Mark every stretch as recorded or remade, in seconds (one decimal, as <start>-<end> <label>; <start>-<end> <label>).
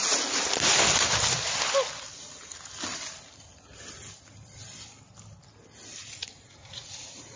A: 0.0-6.0 recorded; 6.0-7.4 remade